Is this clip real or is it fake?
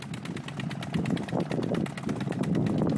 real